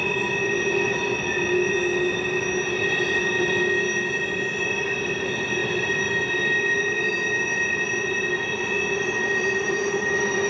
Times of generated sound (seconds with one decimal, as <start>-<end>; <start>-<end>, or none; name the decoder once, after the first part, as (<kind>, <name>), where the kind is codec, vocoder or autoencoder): 5.6-6.1 (vocoder, BigVGAN v2)